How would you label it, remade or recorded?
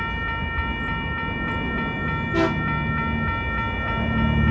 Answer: recorded